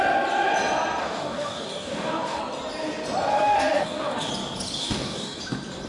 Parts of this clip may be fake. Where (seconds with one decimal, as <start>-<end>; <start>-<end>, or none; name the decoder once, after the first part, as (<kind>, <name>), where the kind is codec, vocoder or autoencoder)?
1.0-2.4 (codec, DAC); 3.3-4.3; 4.8-5.4